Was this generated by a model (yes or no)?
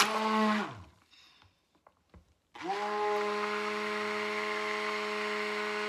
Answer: no